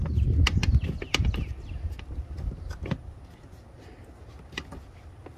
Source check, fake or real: real